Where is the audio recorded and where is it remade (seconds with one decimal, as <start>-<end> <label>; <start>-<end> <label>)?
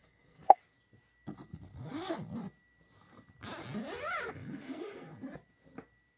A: 0.0-0.6 remade; 0.6-4.3 recorded; 4.3-5.1 remade; 5.1-6.2 recorded